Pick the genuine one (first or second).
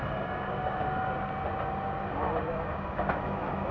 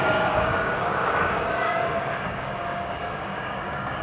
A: first